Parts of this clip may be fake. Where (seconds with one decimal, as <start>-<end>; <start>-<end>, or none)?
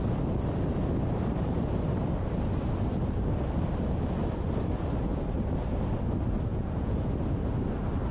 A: 6.5-7.1